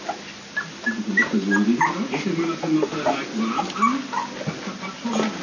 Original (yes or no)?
yes